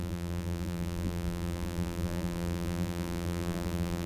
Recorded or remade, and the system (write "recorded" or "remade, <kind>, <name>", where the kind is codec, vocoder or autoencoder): remade, vocoder, BigVGAN v2